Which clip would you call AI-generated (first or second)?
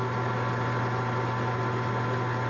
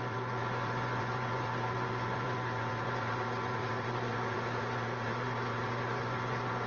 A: second